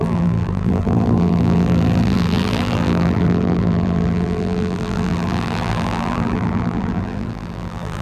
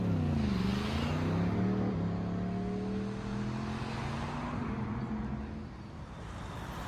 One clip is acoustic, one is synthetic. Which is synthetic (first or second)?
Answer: first